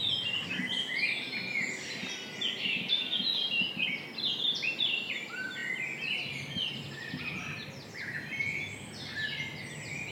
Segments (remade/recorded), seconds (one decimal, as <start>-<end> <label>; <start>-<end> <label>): 0.0-10.1 recorded